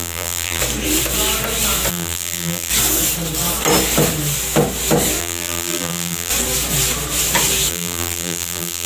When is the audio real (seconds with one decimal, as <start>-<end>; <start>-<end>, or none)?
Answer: 0.6-1.9; 2.7-5.2; 6.3-7.7